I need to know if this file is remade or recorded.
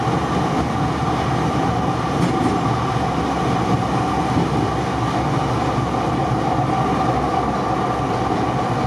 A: recorded